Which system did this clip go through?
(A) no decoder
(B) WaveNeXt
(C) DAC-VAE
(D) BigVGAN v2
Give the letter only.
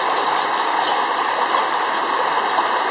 A